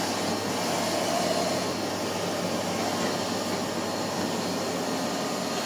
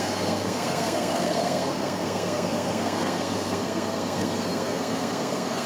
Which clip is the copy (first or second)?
second